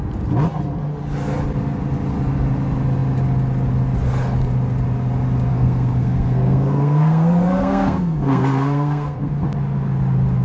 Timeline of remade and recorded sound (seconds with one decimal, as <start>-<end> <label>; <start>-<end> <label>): 0.0-5.5 recorded; 5.5-9.3 remade; 9.3-10.4 recorded